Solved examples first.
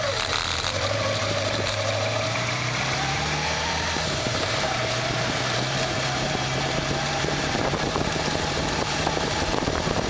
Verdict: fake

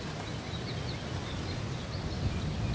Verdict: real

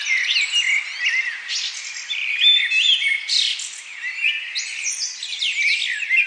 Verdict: real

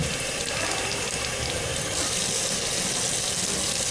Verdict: real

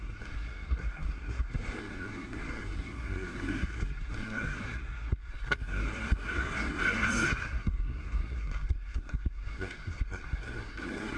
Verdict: fake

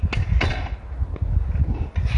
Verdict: real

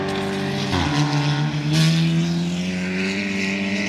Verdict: real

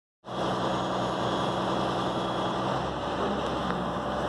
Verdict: real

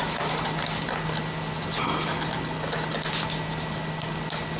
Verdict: real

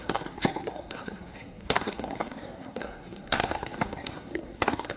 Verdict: fake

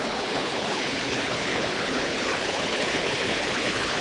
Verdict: fake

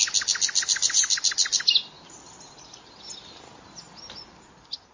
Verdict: real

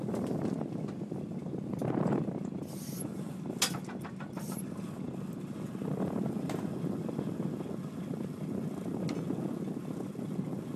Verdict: real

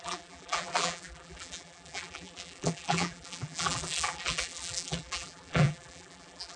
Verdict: fake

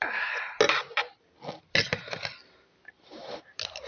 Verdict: real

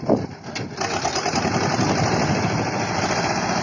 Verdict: real